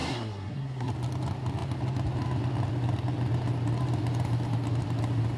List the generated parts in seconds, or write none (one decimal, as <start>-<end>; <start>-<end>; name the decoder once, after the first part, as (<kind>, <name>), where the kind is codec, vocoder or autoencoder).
0.0-0.9 (codec, SNAC)